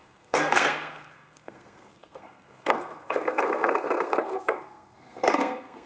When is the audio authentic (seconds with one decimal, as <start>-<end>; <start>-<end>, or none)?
none